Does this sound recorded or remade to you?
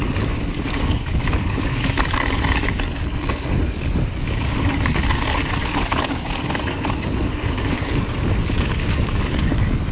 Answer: remade